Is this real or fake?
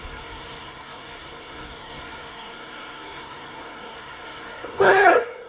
fake